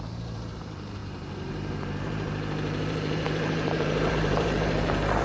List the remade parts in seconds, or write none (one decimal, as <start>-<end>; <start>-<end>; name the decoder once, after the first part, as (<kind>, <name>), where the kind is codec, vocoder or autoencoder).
0.0-5.2 (vocoder, BigVGAN v2)

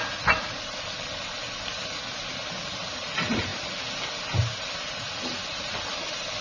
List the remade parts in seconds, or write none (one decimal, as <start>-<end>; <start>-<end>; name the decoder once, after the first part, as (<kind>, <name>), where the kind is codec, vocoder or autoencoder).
none

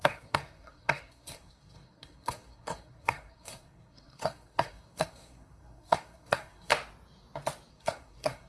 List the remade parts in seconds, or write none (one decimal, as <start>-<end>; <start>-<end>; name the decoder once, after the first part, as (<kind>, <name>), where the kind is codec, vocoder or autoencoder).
0.0-6.7 (codec, SNAC); 7.7-8.5